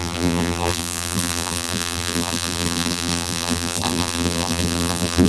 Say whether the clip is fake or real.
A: fake